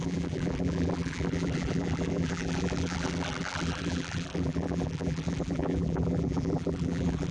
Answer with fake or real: fake